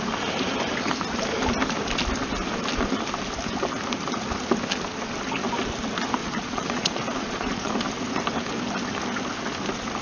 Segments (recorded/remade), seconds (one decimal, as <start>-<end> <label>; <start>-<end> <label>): 0.0-6.2 recorded; 6.2-7.7 remade; 7.7-10.0 recorded